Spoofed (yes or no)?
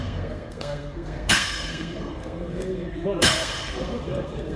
yes